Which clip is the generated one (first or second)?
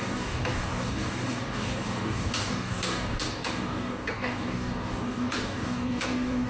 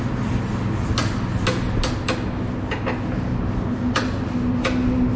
first